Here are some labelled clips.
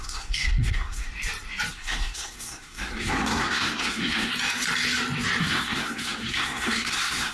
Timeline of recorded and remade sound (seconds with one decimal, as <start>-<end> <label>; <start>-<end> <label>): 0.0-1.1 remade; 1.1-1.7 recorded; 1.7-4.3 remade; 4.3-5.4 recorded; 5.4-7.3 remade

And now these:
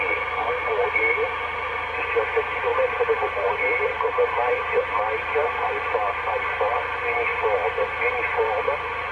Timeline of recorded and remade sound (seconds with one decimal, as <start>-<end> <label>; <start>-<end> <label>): 0.0-0.4 recorded; 0.4-1.0 remade; 1.0-2.7 recorded; 2.7-4.9 remade; 4.9-9.1 recorded

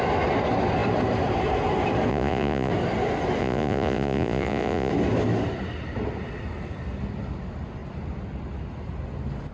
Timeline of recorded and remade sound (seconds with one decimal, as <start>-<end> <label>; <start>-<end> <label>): 0.0-2.1 recorded; 2.1-2.7 remade; 2.7-3.4 recorded; 3.4-4.9 remade; 4.9-9.5 recorded

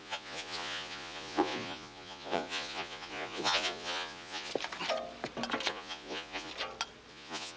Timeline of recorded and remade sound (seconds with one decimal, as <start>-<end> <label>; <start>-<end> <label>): 0.0-4.5 remade; 4.5-5.7 recorded; 5.7-6.5 remade; 6.5-7.1 recorded; 7.1-7.6 remade